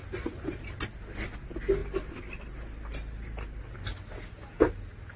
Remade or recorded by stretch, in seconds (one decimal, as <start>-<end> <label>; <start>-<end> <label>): 0.0-5.2 recorded